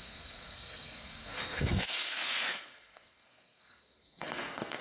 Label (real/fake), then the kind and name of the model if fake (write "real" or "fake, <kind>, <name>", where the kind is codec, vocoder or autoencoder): fake, codec, SNAC